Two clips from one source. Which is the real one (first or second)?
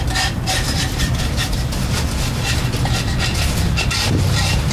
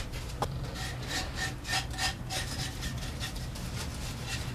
second